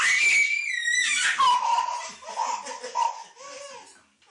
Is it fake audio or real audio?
real